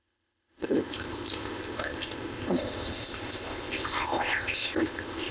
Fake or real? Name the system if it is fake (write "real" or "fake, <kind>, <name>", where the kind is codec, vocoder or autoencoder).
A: fake, codec, ZipCodec